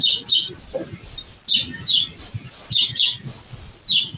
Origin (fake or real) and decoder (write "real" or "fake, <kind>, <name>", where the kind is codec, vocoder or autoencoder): real